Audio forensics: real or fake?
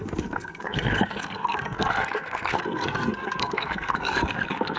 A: fake